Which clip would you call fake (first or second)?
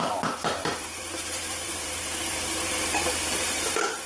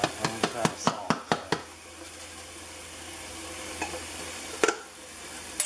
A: first